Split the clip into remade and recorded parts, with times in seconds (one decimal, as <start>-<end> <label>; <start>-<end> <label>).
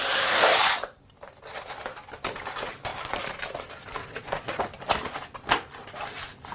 0.0-4.0 recorded; 4.0-4.6 remade; 4.6-6.5 recorded